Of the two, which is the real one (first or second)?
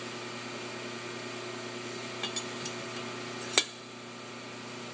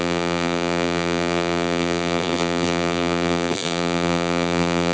first